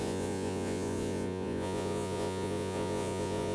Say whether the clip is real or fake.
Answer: fake